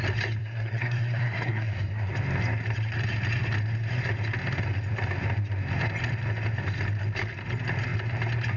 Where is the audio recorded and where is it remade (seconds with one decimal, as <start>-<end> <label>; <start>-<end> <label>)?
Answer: 0.0-0.4 recorded; 0.4-2.1 remade; 2.1-8.6 recorded